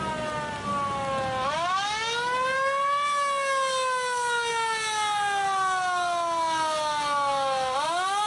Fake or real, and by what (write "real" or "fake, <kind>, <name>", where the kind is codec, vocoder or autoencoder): real